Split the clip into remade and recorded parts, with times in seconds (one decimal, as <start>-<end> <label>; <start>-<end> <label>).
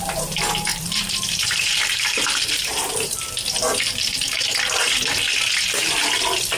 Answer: 0.0-0.7 recorded; 0.7-3.3 remade; 3.3-3.7 recorded; 3.7-4.4 remade; 4.4-6.6 recorded